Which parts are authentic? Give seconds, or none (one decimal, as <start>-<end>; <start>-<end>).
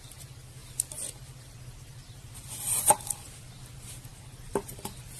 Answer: 0.0-5.2